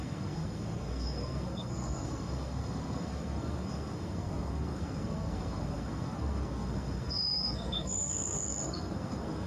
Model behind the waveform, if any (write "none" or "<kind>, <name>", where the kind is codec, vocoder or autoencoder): codec, SNAC